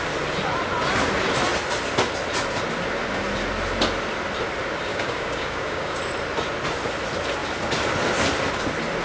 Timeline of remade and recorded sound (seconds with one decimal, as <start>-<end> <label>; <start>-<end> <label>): 0.0-4.9 recorded; 4.9-6.0 remade; 6.0-9.0 recorded